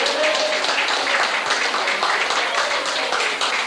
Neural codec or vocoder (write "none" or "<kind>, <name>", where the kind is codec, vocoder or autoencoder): none